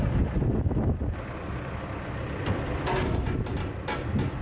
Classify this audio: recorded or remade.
recorded